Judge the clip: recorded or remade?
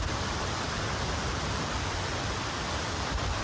remade